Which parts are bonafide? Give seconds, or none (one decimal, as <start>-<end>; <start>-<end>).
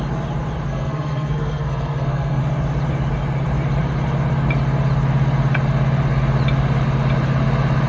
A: 0.0-0.7; 2.4-7.9